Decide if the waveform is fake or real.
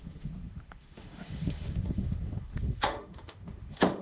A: fake